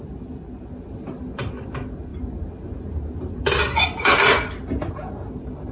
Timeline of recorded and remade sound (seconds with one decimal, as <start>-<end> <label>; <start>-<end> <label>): 0.0-5.7 recorded